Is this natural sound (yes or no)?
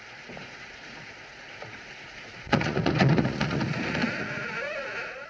no